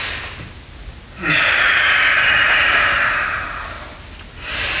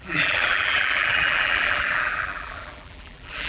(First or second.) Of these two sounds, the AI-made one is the second